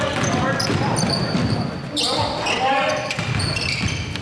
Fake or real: fake